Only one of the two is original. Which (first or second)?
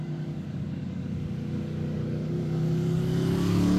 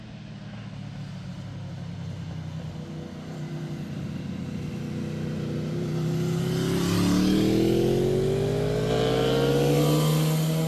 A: second